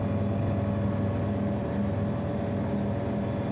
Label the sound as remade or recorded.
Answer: recorded